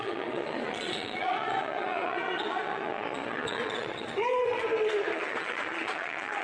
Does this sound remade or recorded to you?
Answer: remade